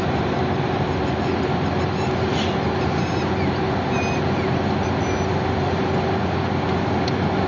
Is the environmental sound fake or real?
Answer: real